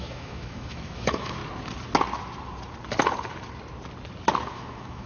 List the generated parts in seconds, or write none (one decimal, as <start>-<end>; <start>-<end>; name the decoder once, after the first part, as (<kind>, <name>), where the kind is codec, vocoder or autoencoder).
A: 0.0-1.4 (autoencoder, DAC-VAE); 4.5-5.1